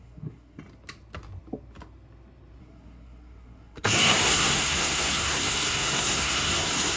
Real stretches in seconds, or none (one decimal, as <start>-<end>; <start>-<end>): 0.6-2.6